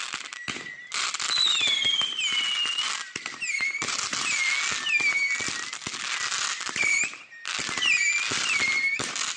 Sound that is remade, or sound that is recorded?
recorded